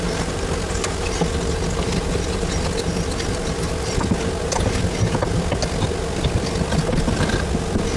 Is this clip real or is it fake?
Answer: real